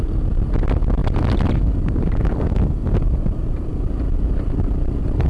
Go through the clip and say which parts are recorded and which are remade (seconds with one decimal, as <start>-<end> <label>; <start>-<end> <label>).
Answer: 0.0-5.3 recorded